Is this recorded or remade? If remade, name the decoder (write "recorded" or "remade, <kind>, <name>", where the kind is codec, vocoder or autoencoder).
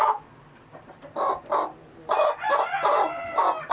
recorded